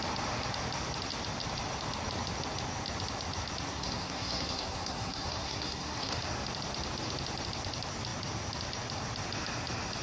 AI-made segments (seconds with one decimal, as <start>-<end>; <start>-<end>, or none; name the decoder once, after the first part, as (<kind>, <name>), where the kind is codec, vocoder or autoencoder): 3.7-6.2 (codec, SNAC)